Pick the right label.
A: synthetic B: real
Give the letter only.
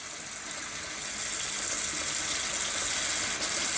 B